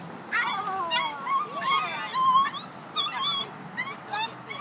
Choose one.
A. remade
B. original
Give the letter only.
B